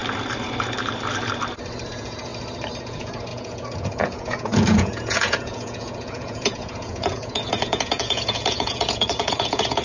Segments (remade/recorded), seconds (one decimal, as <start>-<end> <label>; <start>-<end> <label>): 0.0-1.9 recorded; 1.9-2.3 remade; 2.3-2.8 recorded; 2.8-9.8 remade